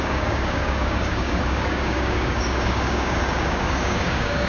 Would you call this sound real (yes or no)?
no